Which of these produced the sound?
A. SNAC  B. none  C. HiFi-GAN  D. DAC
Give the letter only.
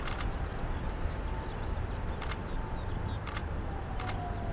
B